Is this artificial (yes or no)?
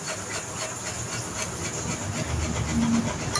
no